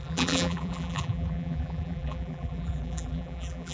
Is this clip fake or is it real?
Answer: fake